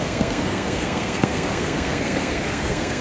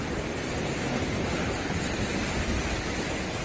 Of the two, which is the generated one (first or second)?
first